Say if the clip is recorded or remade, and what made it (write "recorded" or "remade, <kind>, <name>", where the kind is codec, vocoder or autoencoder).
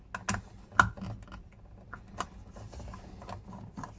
recorded